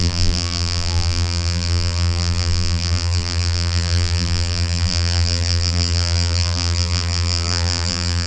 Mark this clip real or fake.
fake